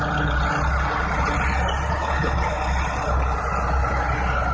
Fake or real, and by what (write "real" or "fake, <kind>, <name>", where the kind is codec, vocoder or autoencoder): real